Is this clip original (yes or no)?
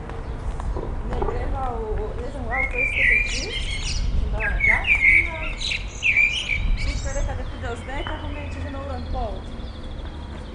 yes